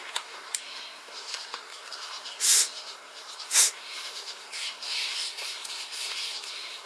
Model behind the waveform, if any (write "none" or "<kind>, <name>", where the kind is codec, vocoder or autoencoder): codec, SNAC